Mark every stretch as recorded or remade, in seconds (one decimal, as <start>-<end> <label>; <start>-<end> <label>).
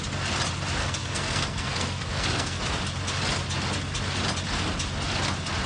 0.0-0.8 recorded; 0.8-2.6 remade; 2.6-5.7 recorded